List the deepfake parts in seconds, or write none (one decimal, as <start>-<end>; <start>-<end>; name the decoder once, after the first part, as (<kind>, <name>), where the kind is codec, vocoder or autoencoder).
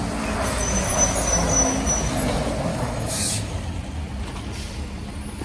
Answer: 2.7-3.5 (autoencoder, DAC-VAE)